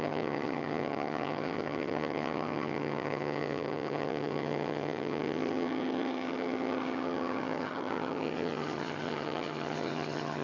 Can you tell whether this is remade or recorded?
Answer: remade